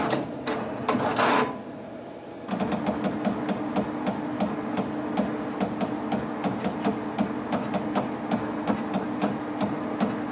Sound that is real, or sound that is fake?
real